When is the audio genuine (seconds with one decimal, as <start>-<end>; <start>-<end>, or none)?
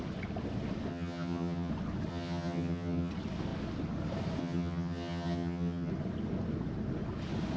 0.0-0.9; 1.7-2.1; 3.1-4.4; 5.9-7.6